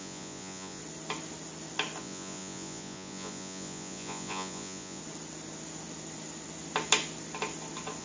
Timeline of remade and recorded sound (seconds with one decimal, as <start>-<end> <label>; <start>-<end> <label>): 0.0-0.8 remade; 0.8-2.0 recorded; 2.0-5.0 remade; 5.0-8.0 recorded